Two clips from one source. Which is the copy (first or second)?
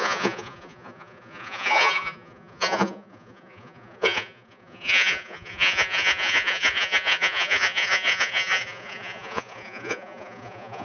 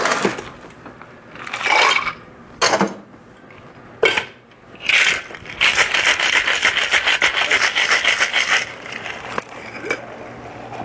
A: first